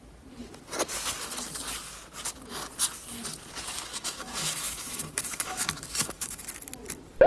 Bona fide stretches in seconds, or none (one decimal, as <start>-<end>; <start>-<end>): 0.0-3.9; 6.4-7.3